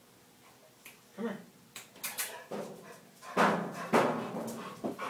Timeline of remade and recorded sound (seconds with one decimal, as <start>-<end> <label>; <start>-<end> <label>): 0.0-5.1 recorded